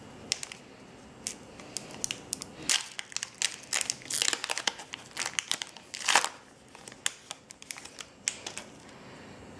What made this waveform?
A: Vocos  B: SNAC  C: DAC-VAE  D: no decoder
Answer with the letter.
D